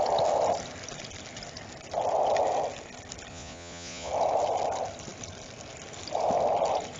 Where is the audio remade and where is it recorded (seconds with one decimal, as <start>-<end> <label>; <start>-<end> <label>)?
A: 0.0-3.3 recorded; 3.3-4.1 remade; 4.1-7.0 recorded